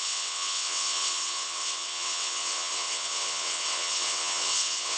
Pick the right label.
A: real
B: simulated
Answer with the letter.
B